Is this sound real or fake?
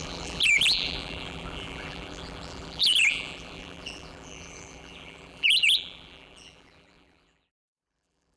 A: fake